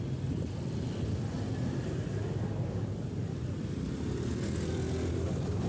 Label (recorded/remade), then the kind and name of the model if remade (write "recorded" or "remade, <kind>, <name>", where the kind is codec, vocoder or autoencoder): recorded